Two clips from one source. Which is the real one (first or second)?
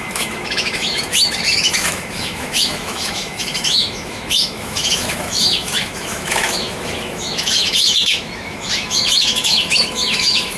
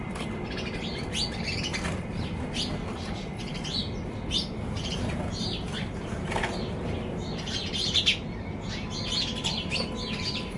second